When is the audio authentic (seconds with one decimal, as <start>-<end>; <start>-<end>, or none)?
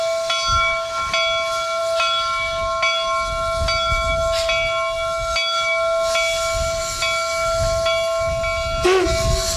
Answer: 0.0-9.6